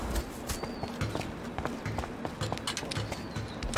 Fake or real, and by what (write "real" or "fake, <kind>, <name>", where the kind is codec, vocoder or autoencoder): real